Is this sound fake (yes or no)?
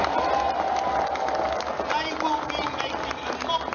no